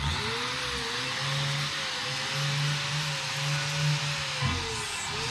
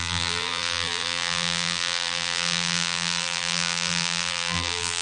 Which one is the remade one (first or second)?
second